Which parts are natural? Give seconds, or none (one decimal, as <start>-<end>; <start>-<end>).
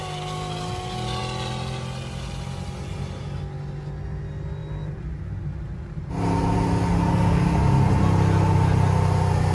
0.0-9.5